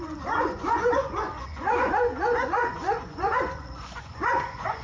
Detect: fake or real fake